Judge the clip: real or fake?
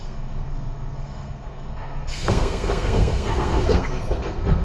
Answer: fake